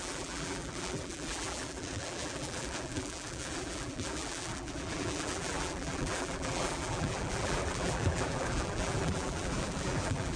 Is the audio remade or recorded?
remade